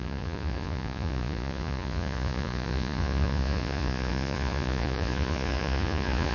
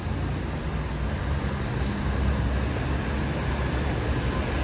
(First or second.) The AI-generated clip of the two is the first